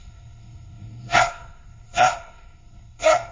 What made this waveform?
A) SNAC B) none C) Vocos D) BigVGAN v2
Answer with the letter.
A